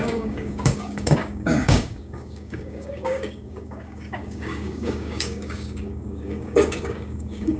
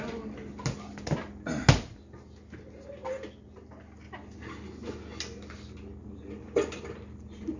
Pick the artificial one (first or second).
first